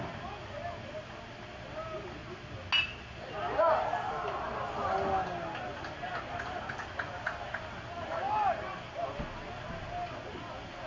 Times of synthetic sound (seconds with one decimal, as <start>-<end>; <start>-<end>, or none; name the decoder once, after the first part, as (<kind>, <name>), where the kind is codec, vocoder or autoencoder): none